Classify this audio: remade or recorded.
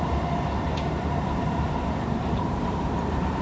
remade